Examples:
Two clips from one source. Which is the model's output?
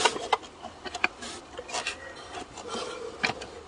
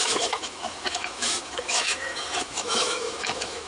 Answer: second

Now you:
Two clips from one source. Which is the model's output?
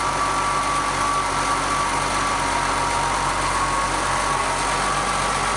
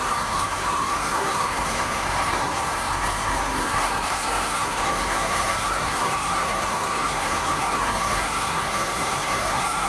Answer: second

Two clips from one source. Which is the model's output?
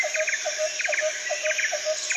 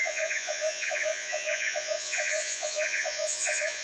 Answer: second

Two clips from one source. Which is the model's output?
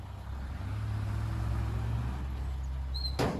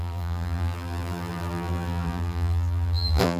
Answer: second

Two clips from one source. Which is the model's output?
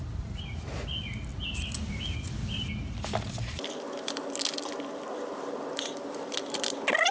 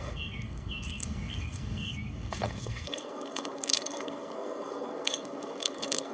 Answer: second